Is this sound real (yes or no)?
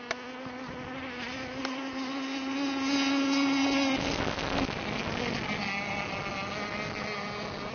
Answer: yes